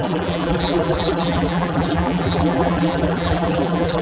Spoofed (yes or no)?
yes